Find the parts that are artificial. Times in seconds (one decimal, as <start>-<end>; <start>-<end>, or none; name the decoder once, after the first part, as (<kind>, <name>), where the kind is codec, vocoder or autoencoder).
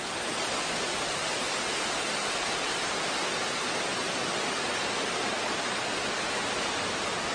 1.2-3.3 (vocoder, BigVGAN v2)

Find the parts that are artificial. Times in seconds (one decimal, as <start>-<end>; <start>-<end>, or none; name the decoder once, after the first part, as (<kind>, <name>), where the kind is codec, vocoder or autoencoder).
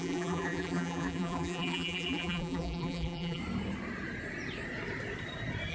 0.0-3.4 (vocoder, BigVGAN v2)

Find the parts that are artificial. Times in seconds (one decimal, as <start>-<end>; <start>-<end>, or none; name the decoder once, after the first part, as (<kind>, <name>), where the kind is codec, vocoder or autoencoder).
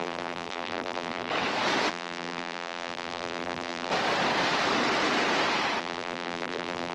0.0-1.3 (vocoder, BigVGAN v2); 1.9-3.9; 5.8-6.9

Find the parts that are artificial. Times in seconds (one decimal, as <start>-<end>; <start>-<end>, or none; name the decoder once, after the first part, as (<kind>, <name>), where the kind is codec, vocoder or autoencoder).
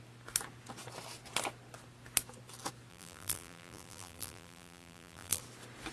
2.9-5.4 (vocoder, BigVGAN v2)